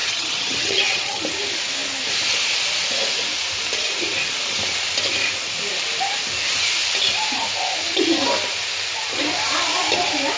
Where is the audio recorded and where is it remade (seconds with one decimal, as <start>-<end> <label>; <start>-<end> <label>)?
0.0-1.2 remade; 1.2-10.4 recorded